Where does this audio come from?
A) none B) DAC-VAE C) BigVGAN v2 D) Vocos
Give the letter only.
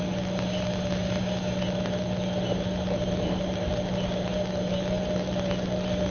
A